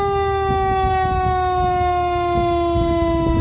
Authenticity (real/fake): real